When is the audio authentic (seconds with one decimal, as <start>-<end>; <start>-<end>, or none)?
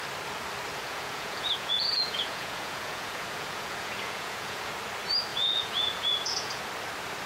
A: 0.0-0.7; 4.7-5.3; 6.6-7.3